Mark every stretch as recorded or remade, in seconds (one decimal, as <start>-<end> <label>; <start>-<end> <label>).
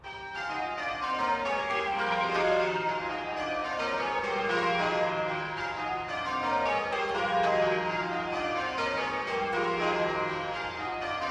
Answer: 0.0-1.6 recorded; 1.6-2.9 remade; 2.9-11.3 recorded